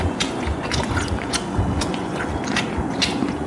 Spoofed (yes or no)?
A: yes